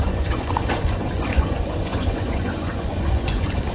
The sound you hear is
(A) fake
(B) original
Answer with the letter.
A